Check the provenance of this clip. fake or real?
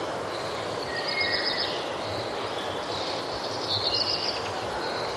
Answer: real